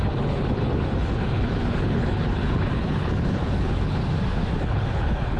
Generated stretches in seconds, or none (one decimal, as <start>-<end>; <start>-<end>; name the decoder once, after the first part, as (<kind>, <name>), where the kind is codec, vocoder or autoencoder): 0.0-4.0 (codec, HILCodec); 4.6-5.4